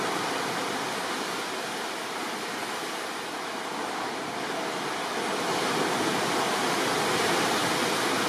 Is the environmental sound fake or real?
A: real